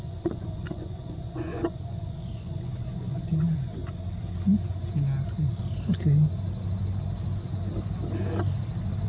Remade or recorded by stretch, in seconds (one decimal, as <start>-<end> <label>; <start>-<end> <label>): 0.0-3.8 remade; 3.8-9.1 recorded